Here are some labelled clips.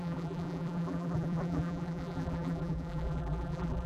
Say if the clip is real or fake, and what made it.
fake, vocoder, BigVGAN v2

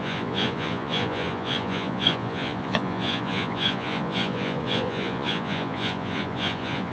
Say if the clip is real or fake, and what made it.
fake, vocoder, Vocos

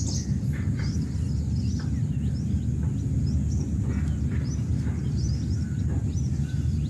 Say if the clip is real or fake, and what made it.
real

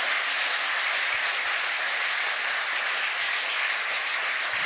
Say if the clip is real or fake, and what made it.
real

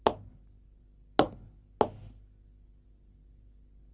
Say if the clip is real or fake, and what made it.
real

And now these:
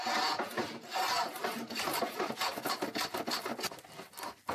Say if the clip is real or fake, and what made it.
real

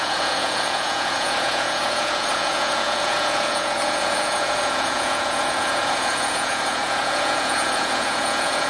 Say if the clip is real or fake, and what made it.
fake, vocoder, Vocos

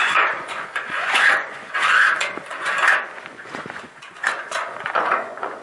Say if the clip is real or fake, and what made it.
fake, vocoder, Vocos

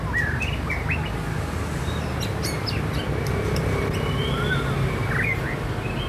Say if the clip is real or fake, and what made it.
real